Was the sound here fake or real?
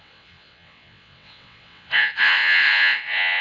fake